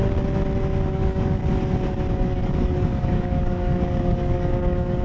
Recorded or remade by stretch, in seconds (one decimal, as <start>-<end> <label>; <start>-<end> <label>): 0.0-0.9 recorded; 0.9-1.4 remade; 1.4-2.1 recorded; 2.1-5.0 remade

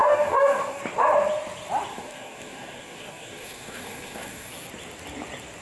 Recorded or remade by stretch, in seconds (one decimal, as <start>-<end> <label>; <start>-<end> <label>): 0.0-0.8 remade; 0.8-1.9 recorded; 1.9-4.5 remade; 4.5-5.6 recorded

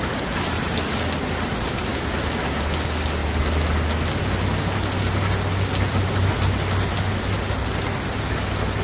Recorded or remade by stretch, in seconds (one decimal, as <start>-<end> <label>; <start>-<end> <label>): 0.0-8.8 recorded

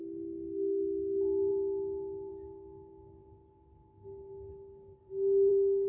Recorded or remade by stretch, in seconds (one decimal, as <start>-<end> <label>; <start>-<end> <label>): 0.0-1.5 remade; 1.5-2.3 recorded; 2.3-3.2 remade; 3.2-5.5 recorded; 5.5-5.9 remade

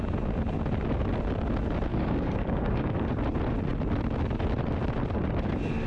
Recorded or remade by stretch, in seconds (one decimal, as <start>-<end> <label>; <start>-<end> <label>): 0.0-1.9 recorded; 1.9-3.0 remade; 3.0-5.9 recorded

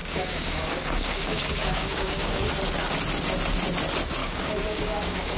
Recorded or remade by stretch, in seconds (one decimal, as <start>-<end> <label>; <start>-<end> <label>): 0.0-2.5 remade; 2.5-4.2 recorded; 4.2-5.4 remade

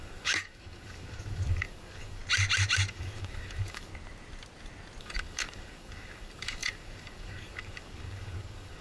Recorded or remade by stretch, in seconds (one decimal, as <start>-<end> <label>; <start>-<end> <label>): 0.0-2.2 remade; 2.2-2.9 recorded; 2.9-3.9 remade; 3.9-5.0 recorded; 5.0-8.8 remade